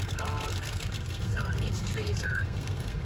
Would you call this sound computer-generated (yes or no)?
yes